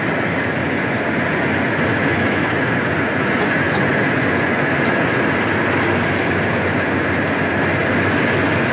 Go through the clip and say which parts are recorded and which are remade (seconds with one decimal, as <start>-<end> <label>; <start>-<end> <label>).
0.0-0.6 recorded; 0.6-5.2 remade; 5.2-6.5 recorded; 6.5-7.2 remade; 7.2-8.7 recorded